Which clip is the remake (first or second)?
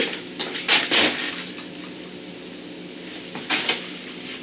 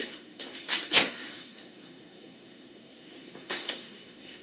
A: second